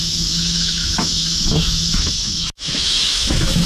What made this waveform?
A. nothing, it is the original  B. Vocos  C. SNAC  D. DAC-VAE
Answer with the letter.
D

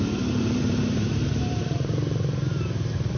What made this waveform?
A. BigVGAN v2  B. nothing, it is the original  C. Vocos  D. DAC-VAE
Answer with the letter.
A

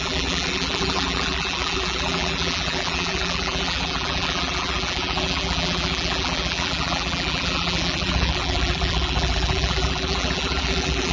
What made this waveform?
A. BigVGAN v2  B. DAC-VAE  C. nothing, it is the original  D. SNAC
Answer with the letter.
A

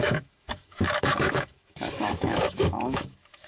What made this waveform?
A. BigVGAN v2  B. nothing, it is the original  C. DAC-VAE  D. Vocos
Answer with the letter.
C